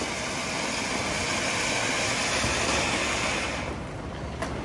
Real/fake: real